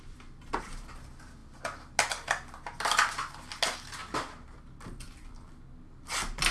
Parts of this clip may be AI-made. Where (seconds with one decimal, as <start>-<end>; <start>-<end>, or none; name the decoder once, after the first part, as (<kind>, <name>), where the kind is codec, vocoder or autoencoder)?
none